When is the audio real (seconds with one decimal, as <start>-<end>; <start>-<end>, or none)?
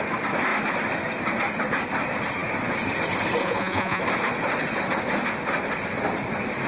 0.0-3.4; 4.0-6.7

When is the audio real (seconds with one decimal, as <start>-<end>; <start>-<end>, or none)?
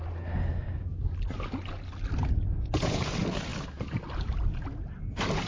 0.0-2.2; 3.1-5.5